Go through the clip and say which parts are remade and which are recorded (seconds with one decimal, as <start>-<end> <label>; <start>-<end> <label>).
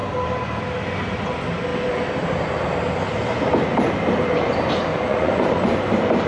0.0-4.9 recorded; 4.9-5.7 remade; 5.7-6.3 recorded